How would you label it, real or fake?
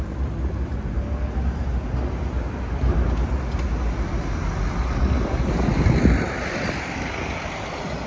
real